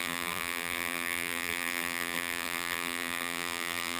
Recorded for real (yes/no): no